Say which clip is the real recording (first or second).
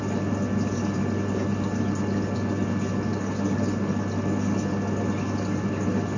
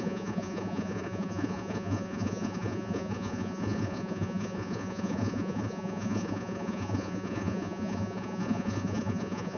first